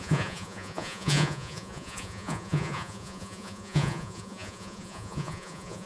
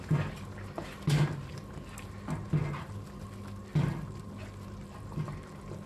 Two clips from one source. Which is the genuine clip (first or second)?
second